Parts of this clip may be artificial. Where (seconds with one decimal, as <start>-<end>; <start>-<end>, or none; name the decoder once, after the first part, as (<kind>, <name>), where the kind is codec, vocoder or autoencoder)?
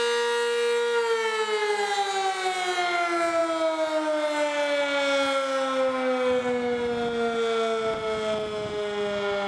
none